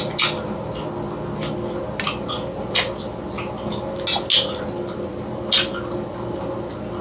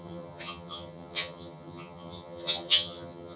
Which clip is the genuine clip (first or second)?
first